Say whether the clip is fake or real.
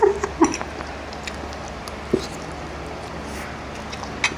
real